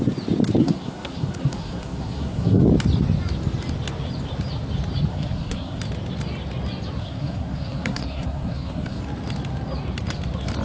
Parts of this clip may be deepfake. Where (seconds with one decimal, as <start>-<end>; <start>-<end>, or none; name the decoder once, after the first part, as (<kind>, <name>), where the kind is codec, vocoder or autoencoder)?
0.6-2.6 (codec, SNAC); 5.1-5.8; 7.0-9.0